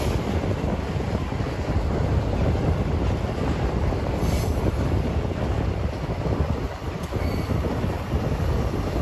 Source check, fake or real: fake